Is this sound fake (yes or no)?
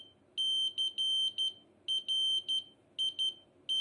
no